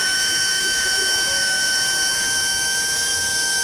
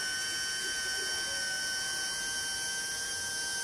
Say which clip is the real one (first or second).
second